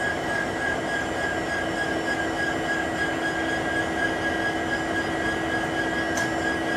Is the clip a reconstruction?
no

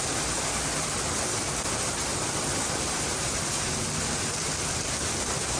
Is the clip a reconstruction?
no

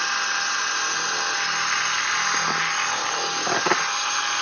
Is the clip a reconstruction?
no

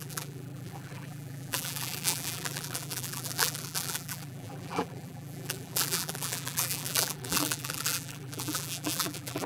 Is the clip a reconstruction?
yes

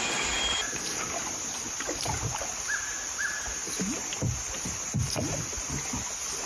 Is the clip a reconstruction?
no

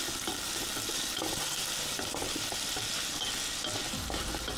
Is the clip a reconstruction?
no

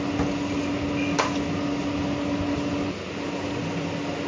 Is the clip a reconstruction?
no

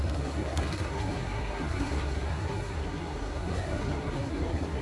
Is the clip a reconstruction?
yes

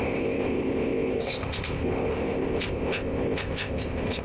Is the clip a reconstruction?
yes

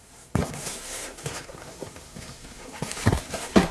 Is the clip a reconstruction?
yes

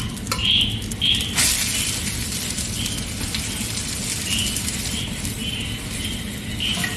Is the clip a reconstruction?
no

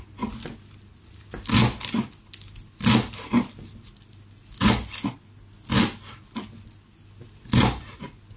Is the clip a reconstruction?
no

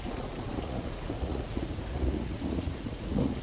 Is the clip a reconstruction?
yes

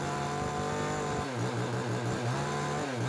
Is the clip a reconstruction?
no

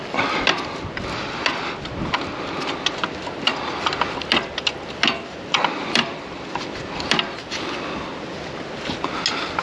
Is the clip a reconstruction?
no